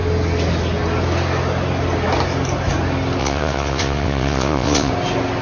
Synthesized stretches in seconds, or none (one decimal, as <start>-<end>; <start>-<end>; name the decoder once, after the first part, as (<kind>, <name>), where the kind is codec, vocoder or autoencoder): 3.2-4.9 (vocoder, WaveNeXt)